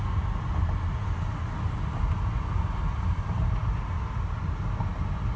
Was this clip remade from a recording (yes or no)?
no